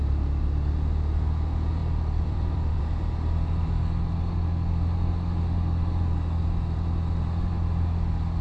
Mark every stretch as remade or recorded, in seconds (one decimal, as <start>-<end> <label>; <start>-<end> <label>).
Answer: 0.0-1.8 recorded; 1.8-2.8 remade; 2.8-8.4 recorded